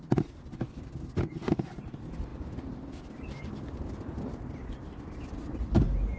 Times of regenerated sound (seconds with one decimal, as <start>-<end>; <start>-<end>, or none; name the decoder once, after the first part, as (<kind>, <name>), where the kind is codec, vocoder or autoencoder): none